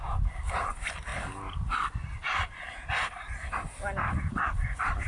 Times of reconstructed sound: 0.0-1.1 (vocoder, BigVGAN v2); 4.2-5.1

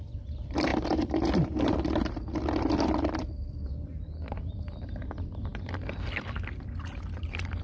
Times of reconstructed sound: 0.0-0.7 (vocoder, BigVGAN v2); 3.3-7.6